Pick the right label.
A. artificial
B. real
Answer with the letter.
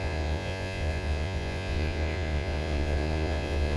A